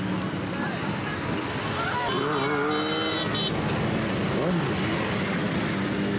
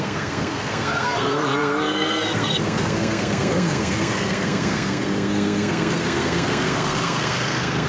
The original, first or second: first